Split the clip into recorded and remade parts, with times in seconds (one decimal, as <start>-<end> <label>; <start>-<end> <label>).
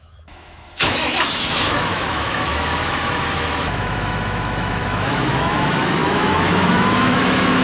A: 0.0-7.6 remade